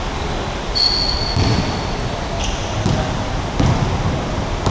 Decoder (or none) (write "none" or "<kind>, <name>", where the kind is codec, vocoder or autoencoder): none